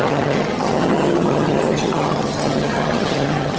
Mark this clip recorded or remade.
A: remade